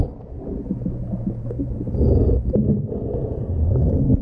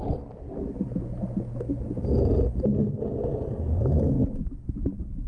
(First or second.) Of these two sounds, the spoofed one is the first